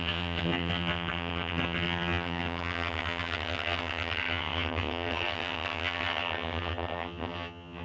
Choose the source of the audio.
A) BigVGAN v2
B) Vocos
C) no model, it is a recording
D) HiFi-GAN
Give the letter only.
D